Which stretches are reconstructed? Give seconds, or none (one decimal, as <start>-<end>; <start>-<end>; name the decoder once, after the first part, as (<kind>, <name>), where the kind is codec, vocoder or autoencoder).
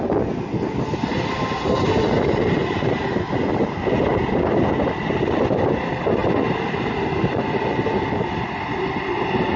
none